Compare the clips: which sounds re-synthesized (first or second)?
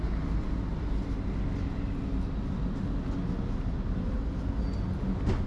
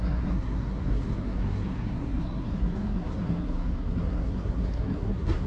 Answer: second